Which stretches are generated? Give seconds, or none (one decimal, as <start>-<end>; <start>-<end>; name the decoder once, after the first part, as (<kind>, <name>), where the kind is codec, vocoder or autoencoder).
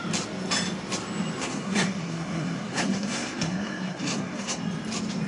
1.4-4.6 (codec, SNAC)